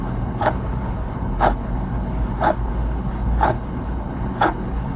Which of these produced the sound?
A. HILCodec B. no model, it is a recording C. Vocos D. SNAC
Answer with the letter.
A